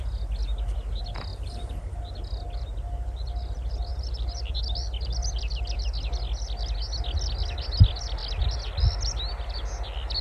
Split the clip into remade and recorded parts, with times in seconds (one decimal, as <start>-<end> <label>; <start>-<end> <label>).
0.0-1.3 recorded; 1.3-2.0 remade; 2.0-3.9 recorded; 3.9-4.6 remade; 4.6-10.2 recorded